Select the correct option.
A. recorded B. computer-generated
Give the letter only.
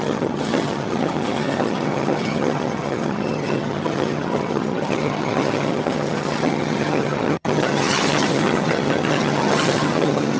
B